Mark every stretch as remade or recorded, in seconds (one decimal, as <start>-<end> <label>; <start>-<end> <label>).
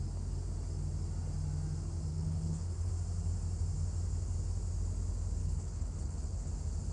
0.0-2.1 recorded; 2.1-2.9 remade; 2.9-5.4 recorded; 5.4-6.5 remade; 6.5-6.9 recorded